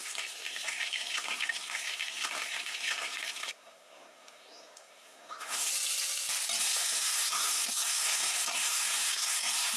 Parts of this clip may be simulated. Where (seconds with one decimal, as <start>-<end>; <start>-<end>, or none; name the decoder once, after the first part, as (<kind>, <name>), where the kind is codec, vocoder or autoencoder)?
0.0-5.7 (codec, SNAC); 6.6-9.8